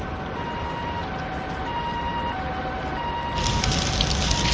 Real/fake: real